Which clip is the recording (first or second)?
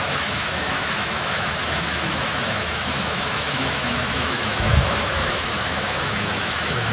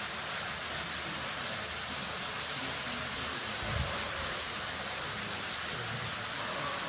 second